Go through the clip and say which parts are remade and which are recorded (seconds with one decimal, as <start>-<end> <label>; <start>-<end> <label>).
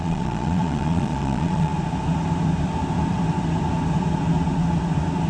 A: 0.0-1.7 remade; 1.7-5.3 recorded